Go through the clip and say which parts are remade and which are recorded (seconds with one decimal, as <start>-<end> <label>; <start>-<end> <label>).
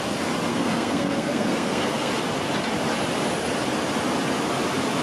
0.0-0.5 recorded; 0.5-2.1 remade; 2.1-5.0 recorded